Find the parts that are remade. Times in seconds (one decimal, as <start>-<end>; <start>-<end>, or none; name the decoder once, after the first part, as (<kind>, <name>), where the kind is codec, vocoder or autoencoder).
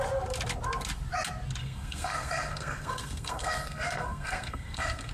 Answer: 1.6-5.1 (codec, SNAC)